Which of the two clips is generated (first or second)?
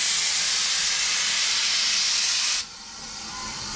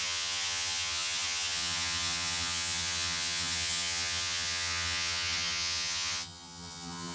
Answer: second